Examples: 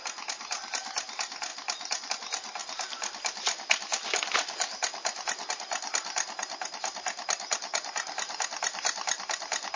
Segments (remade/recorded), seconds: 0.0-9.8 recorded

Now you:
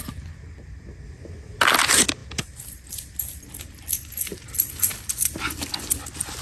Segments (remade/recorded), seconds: 0.0-6.4 recorded

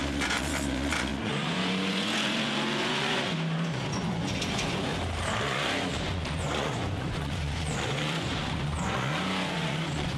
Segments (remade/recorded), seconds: 0.0-4.9 remade; 4.9-5.4 recorded; 5.4-10.2 remade